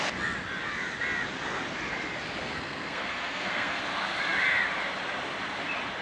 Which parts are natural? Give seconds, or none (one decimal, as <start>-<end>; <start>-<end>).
0.0-2.4; 3.8-6.0